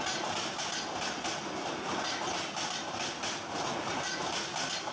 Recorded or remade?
recorded